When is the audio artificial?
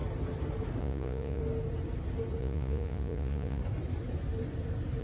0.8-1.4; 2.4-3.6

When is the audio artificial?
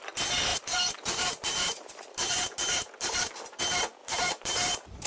0.5-3.6; 4.0-5.1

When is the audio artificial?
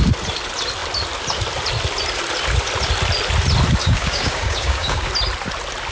3.8-5.1